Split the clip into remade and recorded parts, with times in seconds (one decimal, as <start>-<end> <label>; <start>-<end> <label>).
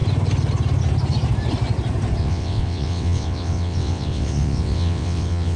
0.0-2.2 recorded; 2.2-5.6 remade